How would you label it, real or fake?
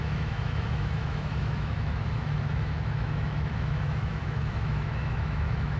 fake